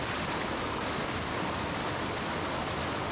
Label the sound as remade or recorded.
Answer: recorded